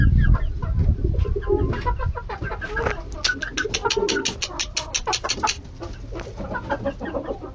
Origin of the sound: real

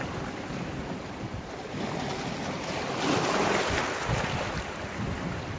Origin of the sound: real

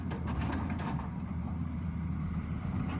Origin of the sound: fake